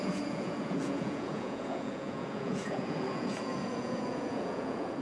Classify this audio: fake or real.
fake